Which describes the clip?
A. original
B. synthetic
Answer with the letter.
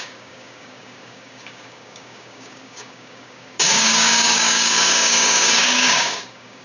B